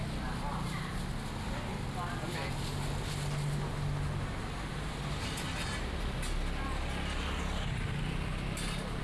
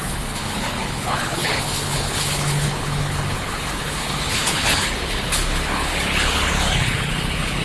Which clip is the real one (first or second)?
first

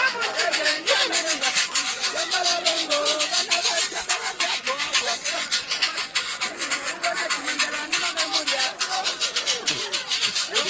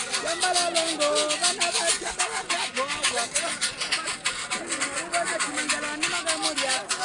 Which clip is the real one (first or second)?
second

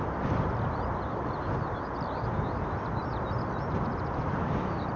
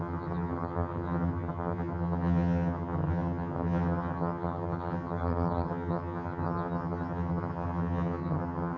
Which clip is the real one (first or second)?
first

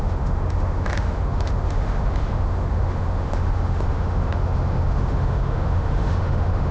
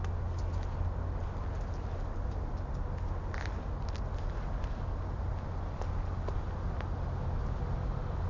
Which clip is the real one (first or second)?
second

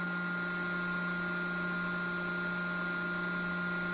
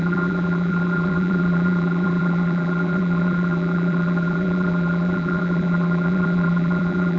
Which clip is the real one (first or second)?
first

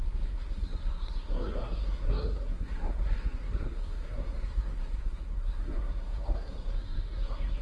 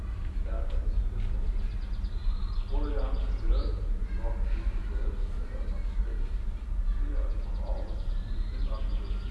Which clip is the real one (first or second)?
second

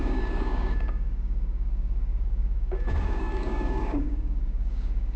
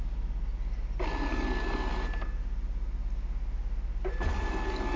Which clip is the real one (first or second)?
second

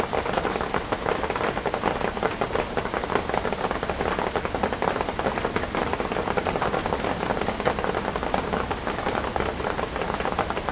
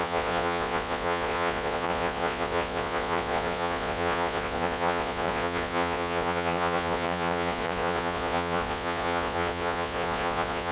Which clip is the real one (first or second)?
first